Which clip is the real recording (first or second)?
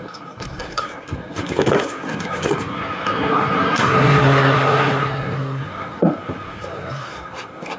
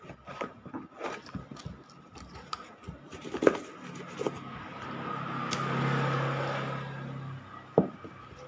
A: second